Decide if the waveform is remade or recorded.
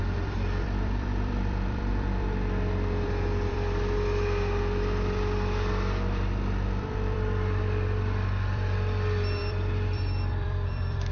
remade